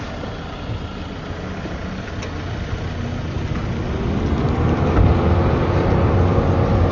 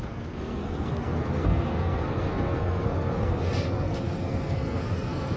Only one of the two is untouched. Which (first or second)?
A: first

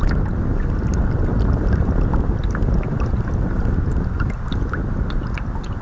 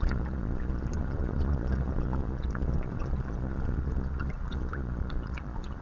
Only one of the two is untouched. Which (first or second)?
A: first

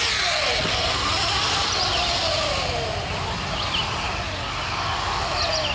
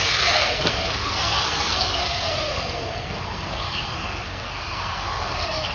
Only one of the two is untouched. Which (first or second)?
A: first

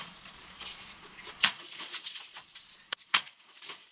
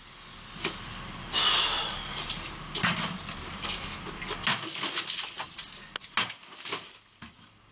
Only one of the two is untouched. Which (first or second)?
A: second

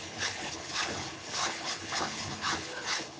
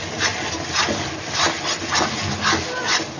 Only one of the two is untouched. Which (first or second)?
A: second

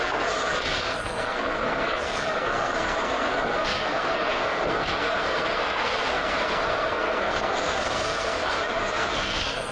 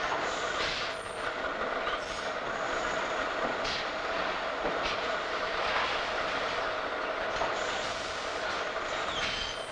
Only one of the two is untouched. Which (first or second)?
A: second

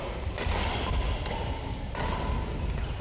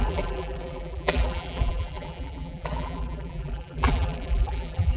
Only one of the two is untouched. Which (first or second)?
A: first